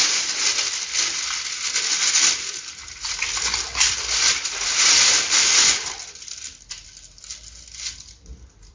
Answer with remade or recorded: recorded